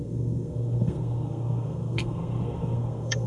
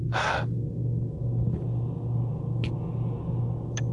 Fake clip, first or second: first